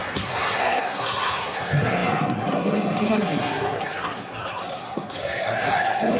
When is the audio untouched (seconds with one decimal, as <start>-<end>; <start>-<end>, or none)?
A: none